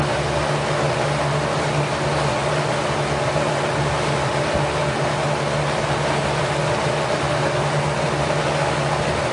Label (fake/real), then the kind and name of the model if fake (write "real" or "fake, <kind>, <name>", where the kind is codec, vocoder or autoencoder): real